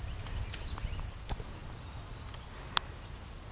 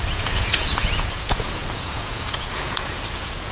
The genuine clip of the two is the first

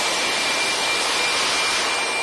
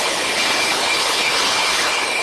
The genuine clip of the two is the first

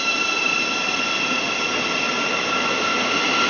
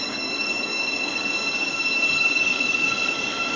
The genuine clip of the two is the first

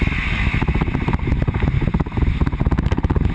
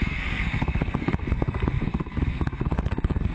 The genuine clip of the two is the first